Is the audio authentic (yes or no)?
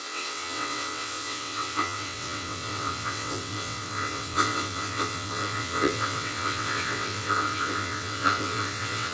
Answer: no